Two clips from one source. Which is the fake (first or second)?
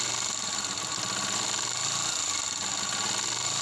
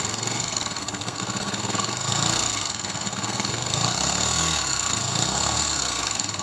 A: second